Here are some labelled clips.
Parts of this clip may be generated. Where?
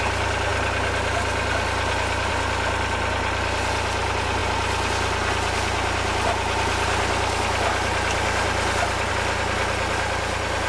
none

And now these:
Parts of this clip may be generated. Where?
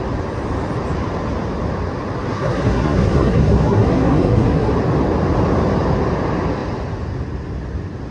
2.3-4.7 (codec, SNAC)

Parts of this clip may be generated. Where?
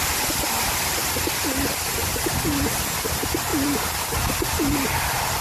none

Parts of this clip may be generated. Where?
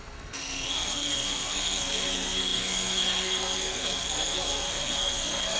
0.0-5.6 (codec, SNAC)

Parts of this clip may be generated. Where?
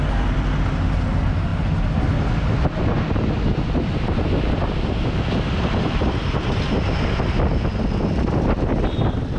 none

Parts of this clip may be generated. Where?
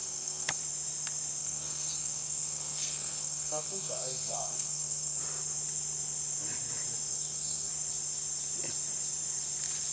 0.0-0.6 (codec, SNAC); 1.4-5.2; 7.1-7.7